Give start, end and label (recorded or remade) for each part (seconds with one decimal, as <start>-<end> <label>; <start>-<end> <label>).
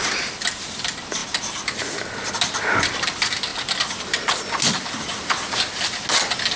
0.0-6.6 recorded